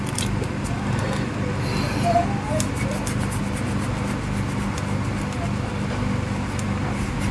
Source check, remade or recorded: recorded